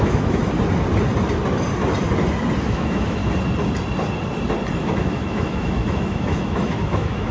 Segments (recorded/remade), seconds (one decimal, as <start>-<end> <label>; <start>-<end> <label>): 0.0-0.4 remade; 0.4-2.6 recorded; 2.6-3.2 remade; 3.2-4.8 recorded; 4.8-7.3 remade